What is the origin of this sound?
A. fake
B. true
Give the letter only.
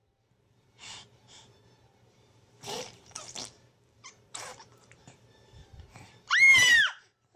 A